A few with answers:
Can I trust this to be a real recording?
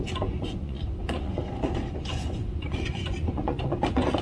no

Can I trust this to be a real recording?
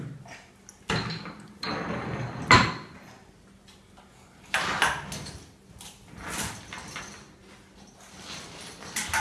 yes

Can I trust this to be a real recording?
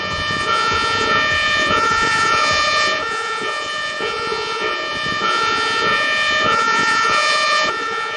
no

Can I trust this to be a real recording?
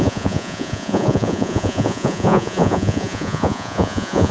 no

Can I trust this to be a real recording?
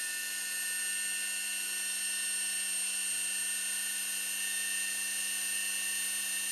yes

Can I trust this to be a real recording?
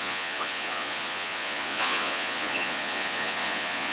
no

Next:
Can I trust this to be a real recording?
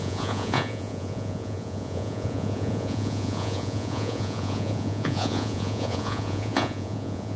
no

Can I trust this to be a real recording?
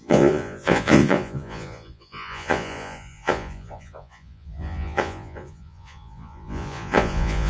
no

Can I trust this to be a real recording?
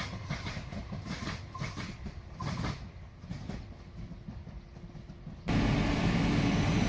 yes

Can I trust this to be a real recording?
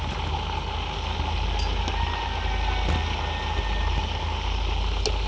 yes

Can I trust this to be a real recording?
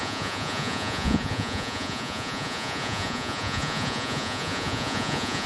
no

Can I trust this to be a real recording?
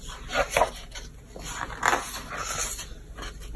yes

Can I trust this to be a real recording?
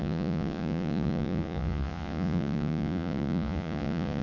no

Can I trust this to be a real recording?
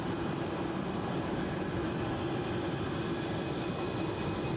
yes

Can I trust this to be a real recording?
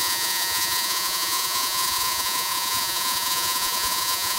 no